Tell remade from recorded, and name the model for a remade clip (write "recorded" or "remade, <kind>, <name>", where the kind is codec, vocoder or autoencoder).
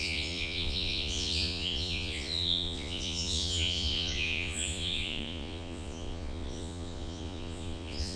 remade, vocoder, Vocos